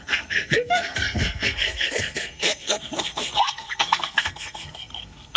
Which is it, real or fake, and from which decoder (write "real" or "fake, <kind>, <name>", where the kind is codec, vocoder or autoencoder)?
fake, codec, SNAC